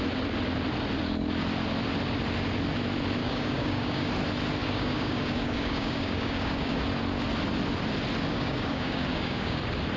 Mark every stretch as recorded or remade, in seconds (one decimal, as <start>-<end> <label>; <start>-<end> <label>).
0.0-3.2 recorded; 3.2-4.1 remade; 4.1-4.6 recorded; 4.6-6.8 remade; 6.8-8.3 recorded; 8.3-9.6 remade; 9.6-10.0 recorded

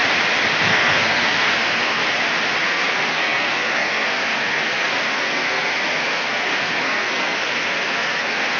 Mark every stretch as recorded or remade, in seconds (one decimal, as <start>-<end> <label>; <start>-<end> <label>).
0.0-0.7 recorded; 0.7-2.0 remade; 2.0-2.6 recorded; 2.6-8.6 remade

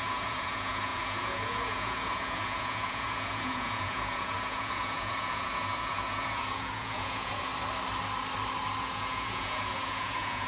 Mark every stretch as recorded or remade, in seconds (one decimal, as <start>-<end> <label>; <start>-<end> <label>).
0.0-7.5 remade; 7.5-8.8 recorded; 8.8-10.5 remade

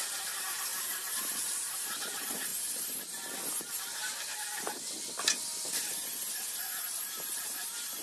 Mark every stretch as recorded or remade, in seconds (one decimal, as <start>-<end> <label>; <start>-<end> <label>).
0.0-2.5 remade; 2.5-3.6 recorded; 3.6-4.0 remade; 4.0-6.6 recorded; 6.6-8.0 remade